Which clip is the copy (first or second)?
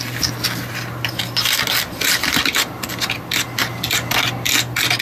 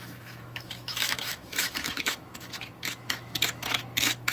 second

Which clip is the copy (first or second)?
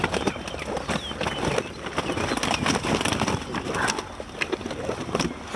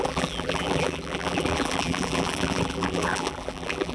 second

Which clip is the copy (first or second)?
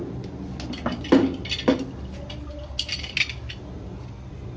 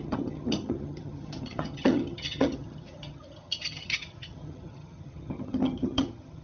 second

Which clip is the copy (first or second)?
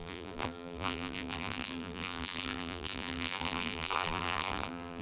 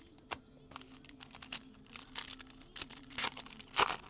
first